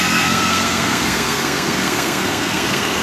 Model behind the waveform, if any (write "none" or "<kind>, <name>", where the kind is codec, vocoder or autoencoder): codec, SNAC